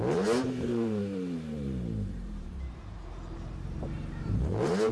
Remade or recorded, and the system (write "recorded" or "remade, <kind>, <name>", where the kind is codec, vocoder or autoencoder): remade, vocoder, BigVGAN v2